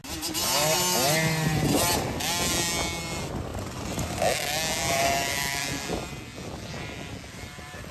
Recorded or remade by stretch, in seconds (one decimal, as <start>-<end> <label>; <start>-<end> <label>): 0.0-7.9 recorded